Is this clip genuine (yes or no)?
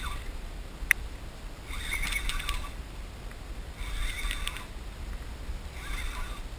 yes